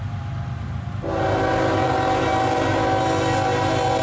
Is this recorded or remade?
recorded